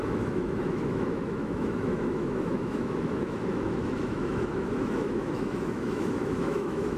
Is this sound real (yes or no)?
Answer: no